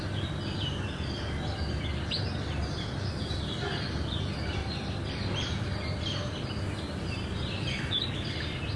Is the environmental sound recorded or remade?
recorded